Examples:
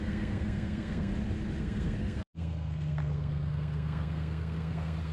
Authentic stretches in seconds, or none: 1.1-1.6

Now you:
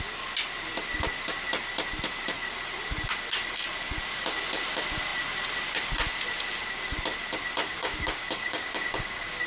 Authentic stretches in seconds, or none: 0.0-7.6

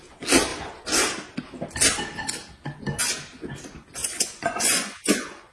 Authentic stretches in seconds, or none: 0.0-4.0

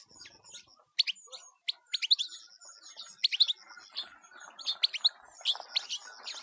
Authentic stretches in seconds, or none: 0.0-6.4

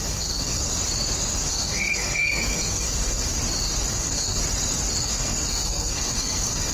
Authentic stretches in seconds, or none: 0.6-1.5; 3.3-3.9; 4.4-5.0

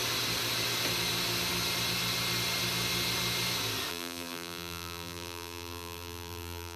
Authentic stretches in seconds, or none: 0.0-3.9

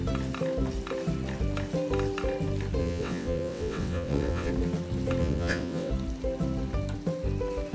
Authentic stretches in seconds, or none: 0.0-2.8; 4.5-5.2; 5.9-7.7

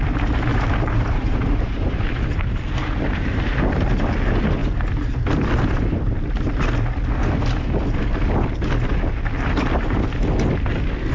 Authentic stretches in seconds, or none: 0.0-0.5; 3.6-11.1